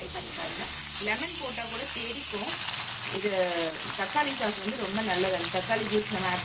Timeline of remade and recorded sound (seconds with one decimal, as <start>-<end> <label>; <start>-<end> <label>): 0.0-0.8 remade; 0.8-6.4 recorded